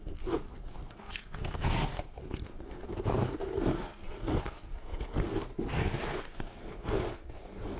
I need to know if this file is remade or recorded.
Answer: remade